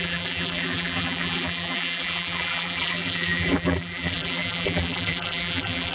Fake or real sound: fake